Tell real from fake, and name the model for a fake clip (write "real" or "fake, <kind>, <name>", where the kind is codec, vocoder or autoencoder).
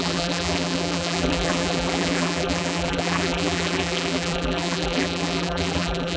fake, vocoder, BigVGAN v2